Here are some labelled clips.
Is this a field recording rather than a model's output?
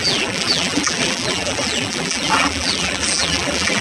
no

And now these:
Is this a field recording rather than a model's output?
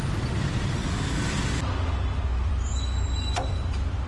yes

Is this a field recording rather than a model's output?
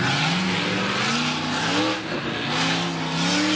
yes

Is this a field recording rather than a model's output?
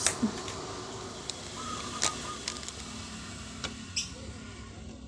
yes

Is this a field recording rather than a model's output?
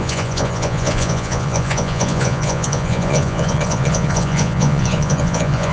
no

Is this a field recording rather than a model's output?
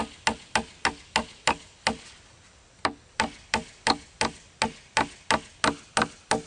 yes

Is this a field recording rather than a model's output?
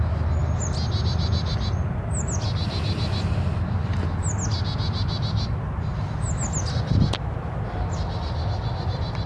yes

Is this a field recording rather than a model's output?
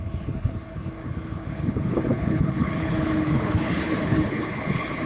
no